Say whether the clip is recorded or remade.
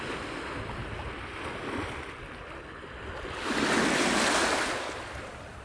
recorded